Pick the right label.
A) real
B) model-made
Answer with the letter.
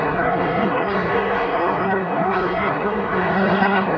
B